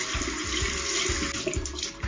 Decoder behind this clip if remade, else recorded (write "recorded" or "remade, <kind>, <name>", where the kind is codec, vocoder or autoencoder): recorded